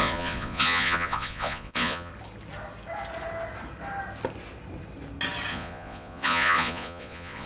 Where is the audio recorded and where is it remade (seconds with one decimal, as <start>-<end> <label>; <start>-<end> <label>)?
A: 0.0-2.1 remade; 2.1-5.5 recorded; 5.5-7.5 remade